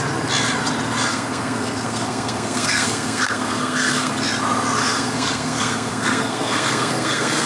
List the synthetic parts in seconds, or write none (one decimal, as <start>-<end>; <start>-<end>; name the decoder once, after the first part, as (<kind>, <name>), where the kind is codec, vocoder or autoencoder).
1.1-4.1 (codec, SNAC); 4.8-7.5